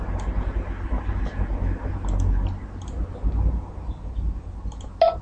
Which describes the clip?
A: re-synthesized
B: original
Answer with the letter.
B